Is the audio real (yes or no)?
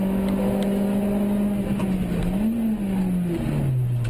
yes